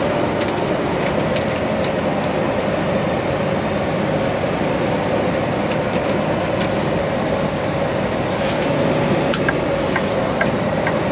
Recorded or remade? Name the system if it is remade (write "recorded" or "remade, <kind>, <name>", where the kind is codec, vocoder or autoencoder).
recorded